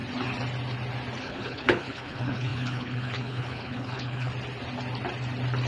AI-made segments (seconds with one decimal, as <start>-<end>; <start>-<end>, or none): 1.2-4.3